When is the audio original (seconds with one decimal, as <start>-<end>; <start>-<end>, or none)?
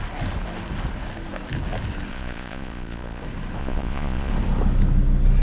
0.0-2.1; 3.2-3.6; 4.3-5.4